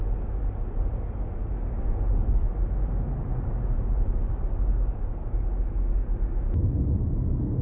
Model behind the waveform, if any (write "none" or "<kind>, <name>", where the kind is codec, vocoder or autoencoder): none